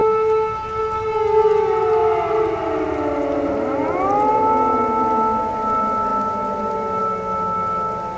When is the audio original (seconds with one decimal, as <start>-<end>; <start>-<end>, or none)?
0.8-8.2